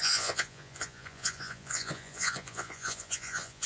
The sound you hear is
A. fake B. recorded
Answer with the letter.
A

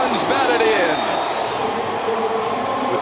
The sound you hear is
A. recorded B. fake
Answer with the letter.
B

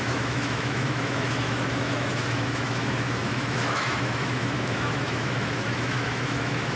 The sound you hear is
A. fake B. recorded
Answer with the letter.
A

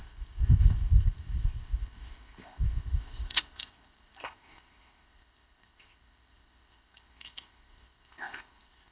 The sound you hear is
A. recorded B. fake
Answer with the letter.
B